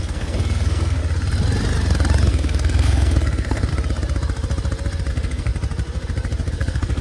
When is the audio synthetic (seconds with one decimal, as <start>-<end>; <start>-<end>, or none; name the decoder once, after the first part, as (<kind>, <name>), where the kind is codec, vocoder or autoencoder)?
0.0-1.0 (codec, SNAC); 2.3-3.7; 5.1-5.5; 6.5-7.0